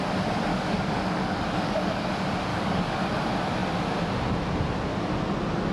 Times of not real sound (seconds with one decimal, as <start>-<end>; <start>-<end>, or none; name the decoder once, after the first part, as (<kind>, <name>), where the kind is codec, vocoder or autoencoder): 0.5-2.1 (codec, DAC); 2.5-3.0